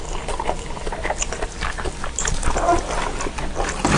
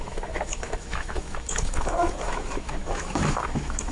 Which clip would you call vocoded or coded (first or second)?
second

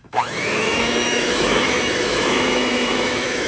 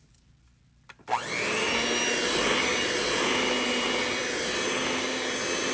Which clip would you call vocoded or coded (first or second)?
first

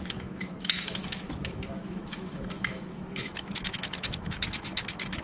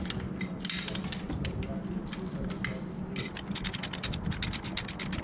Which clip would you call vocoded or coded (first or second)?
first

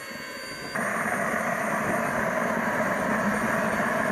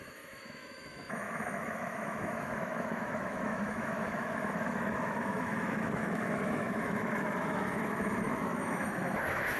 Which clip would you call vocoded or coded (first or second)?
second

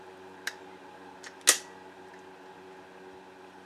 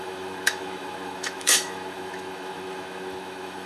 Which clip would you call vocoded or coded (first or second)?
second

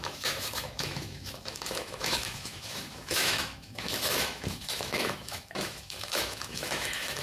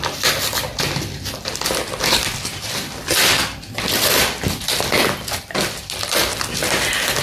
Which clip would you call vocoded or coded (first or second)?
first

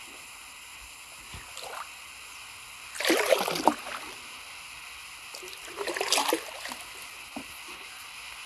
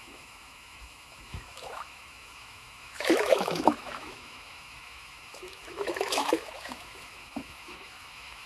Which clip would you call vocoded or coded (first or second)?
second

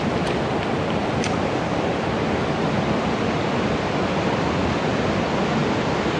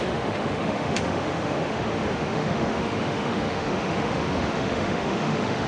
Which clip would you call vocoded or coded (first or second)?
second